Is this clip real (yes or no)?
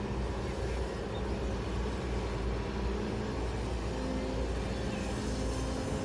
yes